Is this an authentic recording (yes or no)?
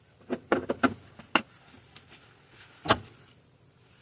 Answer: yes